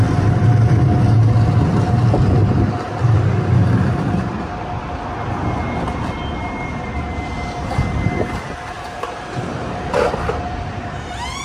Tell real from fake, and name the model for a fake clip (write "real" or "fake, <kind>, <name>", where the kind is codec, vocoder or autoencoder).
real